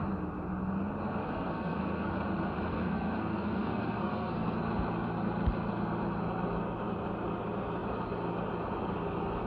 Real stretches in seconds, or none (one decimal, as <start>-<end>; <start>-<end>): 0.0-1.2; 2.1-2.7; 4.6-9.5